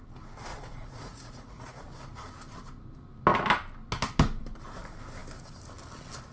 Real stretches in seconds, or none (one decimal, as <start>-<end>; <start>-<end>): 0.0-0.5; 1.8-6.3